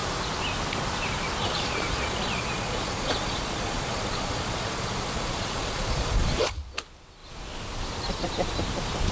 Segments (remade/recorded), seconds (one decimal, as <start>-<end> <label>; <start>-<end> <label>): 0.0-1.4 recorded; 1.4-6.6 remade; 6.6-9.1 recorded

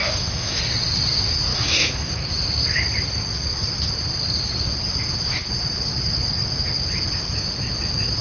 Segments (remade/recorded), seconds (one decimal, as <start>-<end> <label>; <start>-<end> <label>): 0.0-0.6 remade; 0.6-1.5 recorded; 1.5-2.3 remade; 2.3-8.2 recorded

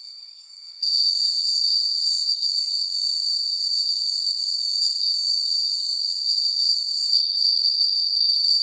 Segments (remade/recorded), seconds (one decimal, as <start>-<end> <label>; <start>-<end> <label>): 0.0-8.6 remade

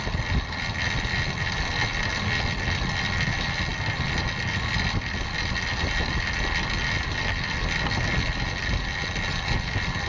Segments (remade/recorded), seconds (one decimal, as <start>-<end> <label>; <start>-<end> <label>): 0.0-10.1 recorded

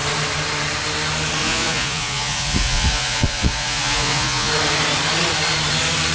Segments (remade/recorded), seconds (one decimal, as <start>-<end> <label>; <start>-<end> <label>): 0.0-1.4 recorded; 1.4-4.5 remade; 4.5-6.1 recorded

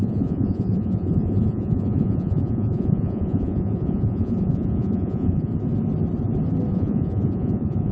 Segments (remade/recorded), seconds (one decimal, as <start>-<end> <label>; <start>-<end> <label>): 0.0-5.5 remade; 5.5-6.7 recorded; 6.7-7.9 remade